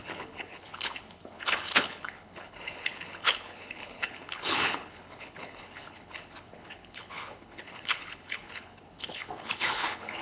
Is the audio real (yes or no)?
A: no